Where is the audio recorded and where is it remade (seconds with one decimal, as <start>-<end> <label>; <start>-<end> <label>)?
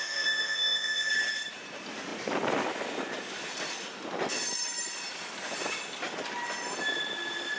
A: 0.0-1.1 remade; 1.1-7.6 recorded